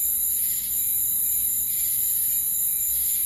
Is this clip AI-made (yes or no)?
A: yes